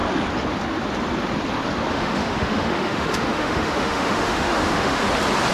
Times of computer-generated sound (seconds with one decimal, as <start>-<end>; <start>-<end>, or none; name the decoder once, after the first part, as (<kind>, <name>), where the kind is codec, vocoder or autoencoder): 1.9-5.1 (autoencoder, DAC-VAE)